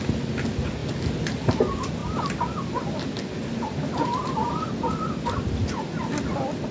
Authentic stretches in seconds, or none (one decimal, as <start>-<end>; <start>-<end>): 0.0-4.2; 5.9-6.7